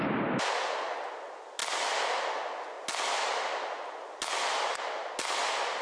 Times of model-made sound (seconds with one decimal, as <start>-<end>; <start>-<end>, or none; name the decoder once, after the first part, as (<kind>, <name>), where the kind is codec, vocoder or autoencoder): none